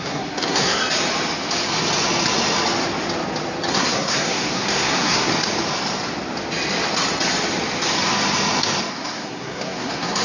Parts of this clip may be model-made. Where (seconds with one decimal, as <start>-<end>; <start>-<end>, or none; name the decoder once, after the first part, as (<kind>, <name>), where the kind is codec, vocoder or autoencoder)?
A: 0.0-0.8 (codec, SNAC); 3.7-5.3; 8.9-10.2